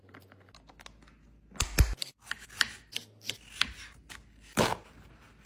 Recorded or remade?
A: recorded